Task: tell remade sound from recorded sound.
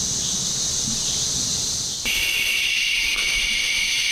recorded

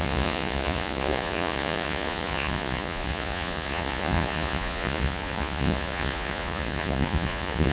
remade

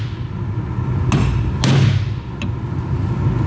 recorded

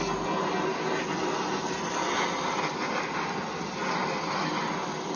recorded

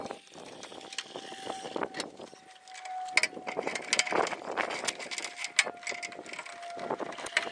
recorded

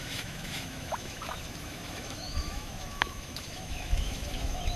remade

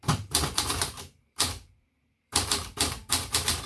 remade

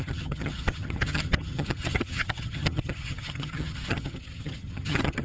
remade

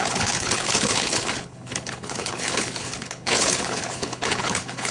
remade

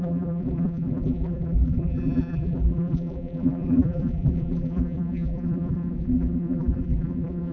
remade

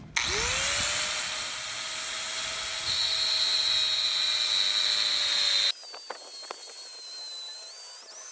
recorded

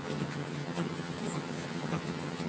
remade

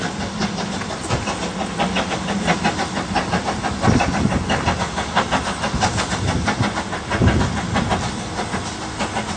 recorded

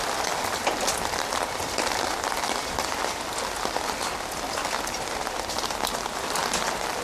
recorded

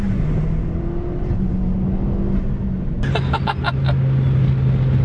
recorded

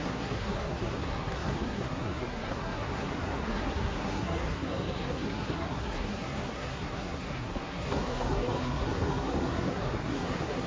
remade